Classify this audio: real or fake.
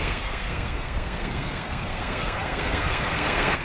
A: fake